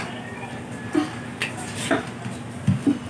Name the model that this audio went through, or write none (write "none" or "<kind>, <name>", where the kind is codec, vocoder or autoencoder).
none